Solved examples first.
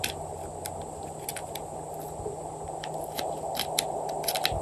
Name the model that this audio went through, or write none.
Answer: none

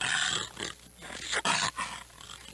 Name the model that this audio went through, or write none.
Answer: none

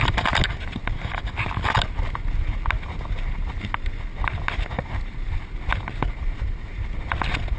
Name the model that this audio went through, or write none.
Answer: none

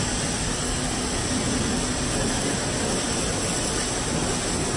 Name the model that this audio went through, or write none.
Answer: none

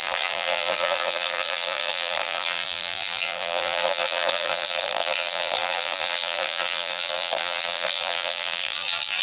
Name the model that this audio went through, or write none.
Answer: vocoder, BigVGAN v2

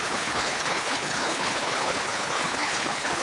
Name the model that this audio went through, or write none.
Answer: codec, HILCodec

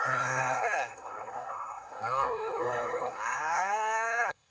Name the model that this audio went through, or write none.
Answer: codec, SNAC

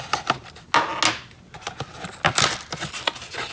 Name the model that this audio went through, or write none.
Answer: none